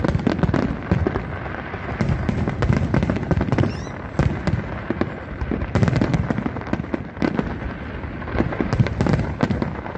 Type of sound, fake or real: real